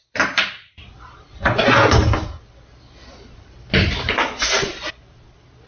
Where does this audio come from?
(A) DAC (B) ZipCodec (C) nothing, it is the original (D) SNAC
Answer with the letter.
C